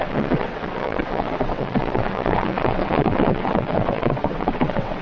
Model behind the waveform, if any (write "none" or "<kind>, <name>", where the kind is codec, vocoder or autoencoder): vocoder, WaveNeXt